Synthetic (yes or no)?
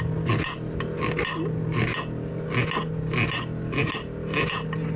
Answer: no